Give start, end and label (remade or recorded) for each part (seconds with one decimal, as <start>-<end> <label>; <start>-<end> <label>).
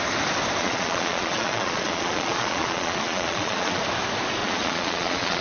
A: 0.0-0.6 recorded; 0.6-3.8 remade; 3.8-4.4 recorded; 4.4-5.4 remade